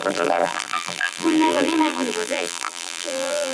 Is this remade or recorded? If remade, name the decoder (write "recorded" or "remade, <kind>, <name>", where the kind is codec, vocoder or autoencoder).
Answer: remade, vocoder, BigVGAN v2